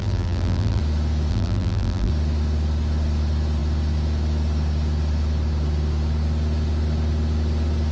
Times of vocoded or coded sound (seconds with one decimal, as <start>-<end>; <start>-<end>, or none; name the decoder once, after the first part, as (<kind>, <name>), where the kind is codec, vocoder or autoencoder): 0.0-0.8 (vocoder, BigVGAN v2); 1.3-2.1